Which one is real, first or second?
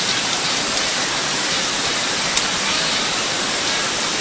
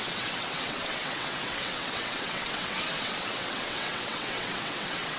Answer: first